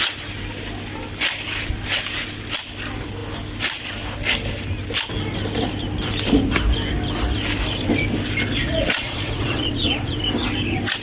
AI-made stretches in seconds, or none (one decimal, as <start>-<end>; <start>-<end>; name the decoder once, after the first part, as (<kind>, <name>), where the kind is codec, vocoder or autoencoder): 8.6-10.2 (vocoder, Vocos)